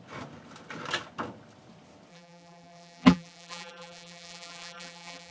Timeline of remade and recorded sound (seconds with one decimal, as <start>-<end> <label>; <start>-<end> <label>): 0.0-2.1 recorded; 2.1-5.3 remade